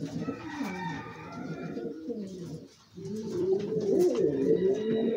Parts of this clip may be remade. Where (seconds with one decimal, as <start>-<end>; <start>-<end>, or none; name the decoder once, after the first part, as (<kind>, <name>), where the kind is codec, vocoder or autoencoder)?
3.2-3.7 (vocoder, BigVGAN v2)